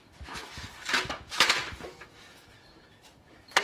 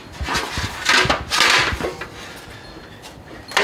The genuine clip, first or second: second